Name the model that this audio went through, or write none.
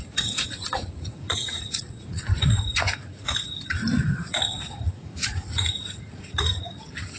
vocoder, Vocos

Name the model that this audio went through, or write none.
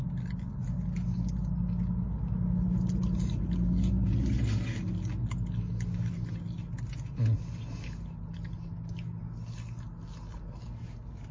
none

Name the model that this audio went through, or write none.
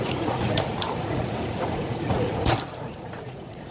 vocoder, Vocos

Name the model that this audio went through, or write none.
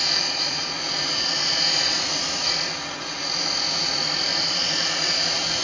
vocoder, Vocos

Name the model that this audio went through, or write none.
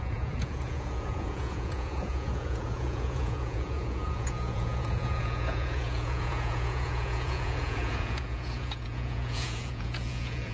vocoder, Vocos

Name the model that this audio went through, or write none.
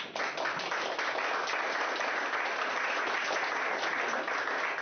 none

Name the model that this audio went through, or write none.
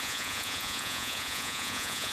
vocoder, Vocos